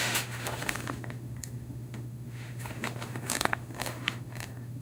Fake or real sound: fake